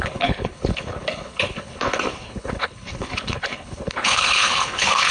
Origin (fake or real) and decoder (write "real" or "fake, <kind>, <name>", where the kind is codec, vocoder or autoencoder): fake, codec, HILCodec